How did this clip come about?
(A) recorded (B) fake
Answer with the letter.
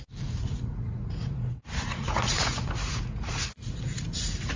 B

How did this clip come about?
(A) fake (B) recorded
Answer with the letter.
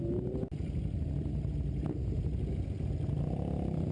B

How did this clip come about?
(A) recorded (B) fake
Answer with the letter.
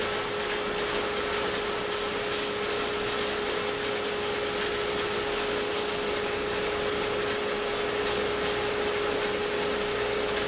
A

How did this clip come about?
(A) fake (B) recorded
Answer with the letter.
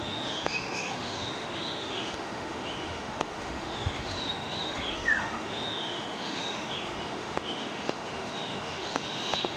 A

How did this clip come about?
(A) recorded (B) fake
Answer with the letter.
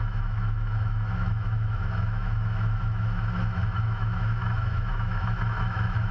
B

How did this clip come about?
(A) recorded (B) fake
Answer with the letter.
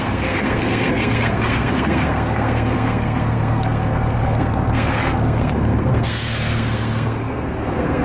B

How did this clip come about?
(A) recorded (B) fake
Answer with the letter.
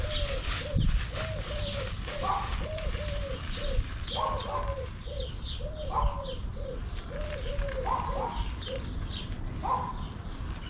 B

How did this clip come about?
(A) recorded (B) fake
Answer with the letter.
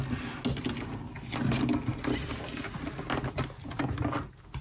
A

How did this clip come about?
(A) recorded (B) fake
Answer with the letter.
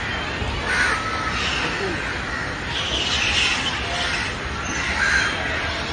A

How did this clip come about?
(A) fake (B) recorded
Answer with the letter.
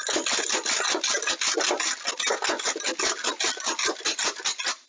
B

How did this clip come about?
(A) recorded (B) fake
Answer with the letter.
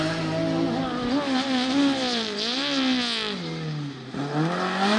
A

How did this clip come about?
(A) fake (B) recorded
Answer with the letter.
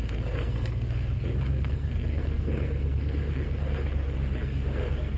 A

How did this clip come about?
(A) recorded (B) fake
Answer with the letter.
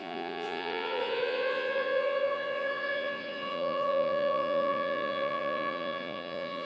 B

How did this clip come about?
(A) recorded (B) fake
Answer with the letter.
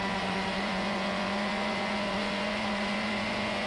B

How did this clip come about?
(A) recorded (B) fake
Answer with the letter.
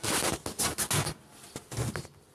A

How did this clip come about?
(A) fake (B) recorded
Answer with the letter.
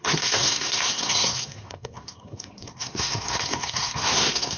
A